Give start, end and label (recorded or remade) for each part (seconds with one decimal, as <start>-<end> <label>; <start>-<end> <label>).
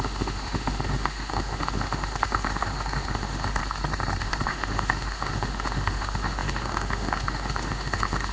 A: 0.0-3.6 remade; 3.6-4.2 recorded; 4.2-8.3 remade